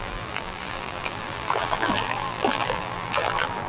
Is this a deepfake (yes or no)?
yes